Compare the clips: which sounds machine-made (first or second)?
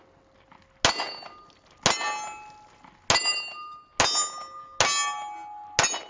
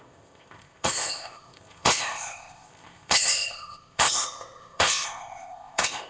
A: second